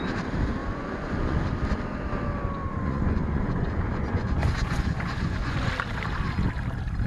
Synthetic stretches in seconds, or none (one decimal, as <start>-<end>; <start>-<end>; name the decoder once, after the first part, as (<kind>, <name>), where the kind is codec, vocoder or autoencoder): 0.6-1.4 (vocoder, Vocos); 2.6-5.7